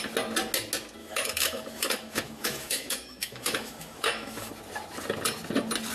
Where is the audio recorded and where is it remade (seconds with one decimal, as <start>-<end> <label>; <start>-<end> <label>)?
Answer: 0.0-1.0 recorded; 1.0-4.5 remade; 4.5-5.9 recorded